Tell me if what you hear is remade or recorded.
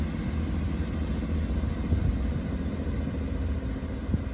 recorded